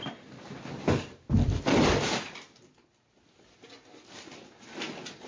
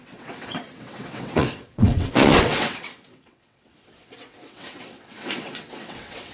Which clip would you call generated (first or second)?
second